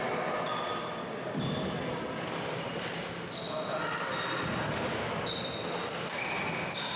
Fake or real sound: real